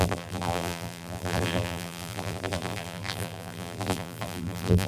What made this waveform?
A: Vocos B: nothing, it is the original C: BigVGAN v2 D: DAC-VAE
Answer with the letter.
C